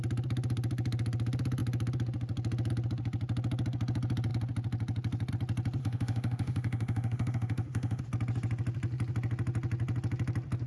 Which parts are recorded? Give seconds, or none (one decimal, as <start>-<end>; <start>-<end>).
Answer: 0.0-5.8; 8.0-10.7